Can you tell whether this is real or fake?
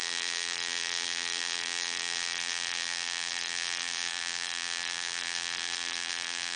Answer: fake